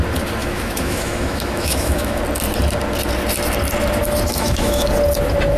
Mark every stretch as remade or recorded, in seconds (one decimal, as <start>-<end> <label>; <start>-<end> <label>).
0.0-0.4 recorded; 0.4-2.2 remade; 2.2-4.3 recorded; 4.3-4.9 remade; 4.9-5.6 recorded